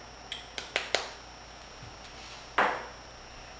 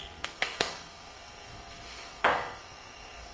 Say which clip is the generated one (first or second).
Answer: second